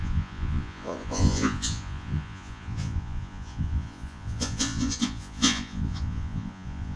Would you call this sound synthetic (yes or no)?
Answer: yes